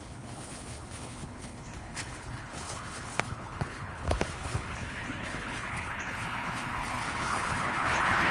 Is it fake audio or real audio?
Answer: fake